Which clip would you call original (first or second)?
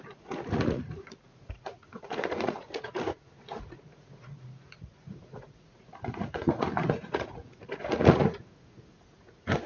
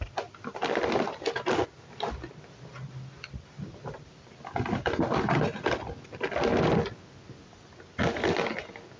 second